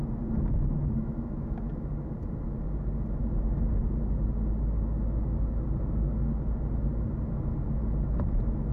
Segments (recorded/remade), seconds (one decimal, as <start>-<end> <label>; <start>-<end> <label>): 0.0-0.8 recorded; 0.8-1.9 remade; 1.9-8.7 recorded